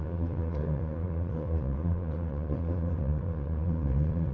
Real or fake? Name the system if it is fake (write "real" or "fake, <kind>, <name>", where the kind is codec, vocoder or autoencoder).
fake, vocoder, Vocos